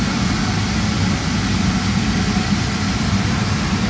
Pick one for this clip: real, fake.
real